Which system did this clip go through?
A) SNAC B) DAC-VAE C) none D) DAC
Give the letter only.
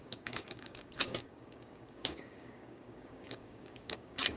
D